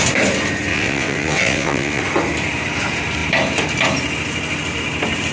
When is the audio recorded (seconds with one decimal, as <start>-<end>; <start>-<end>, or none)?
0.0-0.7; 2.0-5.3